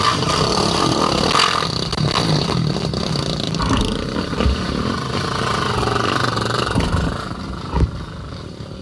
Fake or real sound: real